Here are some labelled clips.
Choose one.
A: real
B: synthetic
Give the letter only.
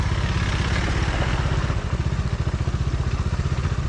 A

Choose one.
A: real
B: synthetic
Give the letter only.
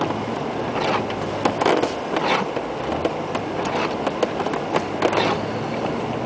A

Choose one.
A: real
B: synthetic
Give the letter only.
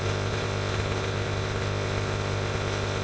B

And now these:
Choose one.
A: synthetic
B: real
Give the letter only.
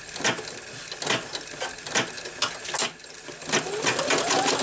B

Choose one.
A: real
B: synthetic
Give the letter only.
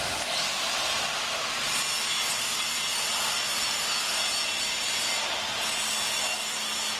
A